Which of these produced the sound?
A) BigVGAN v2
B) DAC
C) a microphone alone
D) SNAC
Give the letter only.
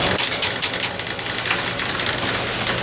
C